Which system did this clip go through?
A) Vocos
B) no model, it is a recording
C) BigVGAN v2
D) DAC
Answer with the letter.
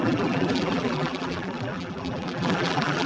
C